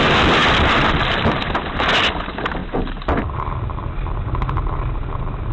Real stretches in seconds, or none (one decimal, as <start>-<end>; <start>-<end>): 0.0-5.5